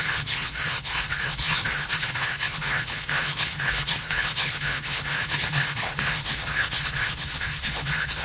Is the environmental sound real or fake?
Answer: fake